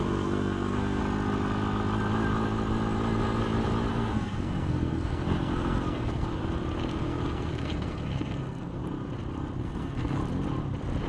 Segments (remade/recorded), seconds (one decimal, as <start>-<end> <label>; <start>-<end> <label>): 0.0-1.0 remade; 1.0-3.9 recorded; 3.9-6.4 remade; 6.4-6.9 recorded; 6.9-8.8 remade; 8.8-9.6 recorded; 9.6-10.2 remade; 10.2-11.1 recorded

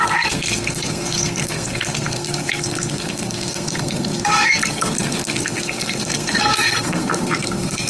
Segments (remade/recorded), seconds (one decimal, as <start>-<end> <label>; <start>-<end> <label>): 0.0-7.9 remade

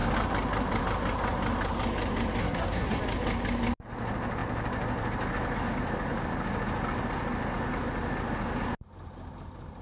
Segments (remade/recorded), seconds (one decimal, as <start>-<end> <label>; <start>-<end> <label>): 0.0-2.4 recorded; 2.4-3.0 remade; 3.0-9.8 recorded

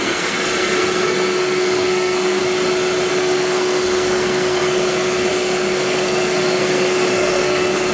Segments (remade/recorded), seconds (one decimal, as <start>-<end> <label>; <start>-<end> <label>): 0.0-2.4 remade; 2.4-3.1 recorded; 3.1-7.9 remade

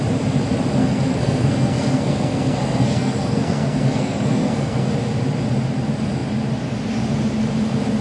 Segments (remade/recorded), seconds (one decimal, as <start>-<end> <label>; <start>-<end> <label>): 0.0-0.8 recorded; 0.8-4.9 remade; 4.9-8.0 recorded